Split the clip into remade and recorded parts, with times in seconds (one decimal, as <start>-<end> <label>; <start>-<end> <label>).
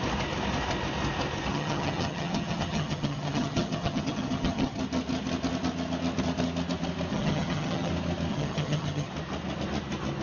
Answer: 0.0-1.5 recorded; 1.5-4.8 remade; 4.8-7.1 recorded; 7.1-7.9 remade; 7.9-8.3 recorded; 8.3-9.1 remade; 9.1-10.2 recorded